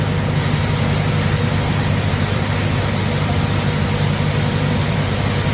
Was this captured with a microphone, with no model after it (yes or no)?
yes